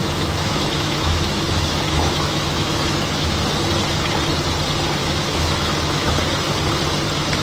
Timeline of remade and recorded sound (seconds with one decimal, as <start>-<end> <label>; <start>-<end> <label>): 0.0-3.4 remade; 3.4-5.0 recorded; 5.0-6.1 remade; 6.1-7.4 recorded